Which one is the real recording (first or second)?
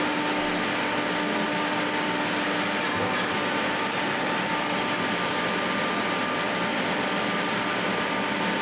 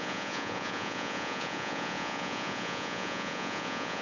first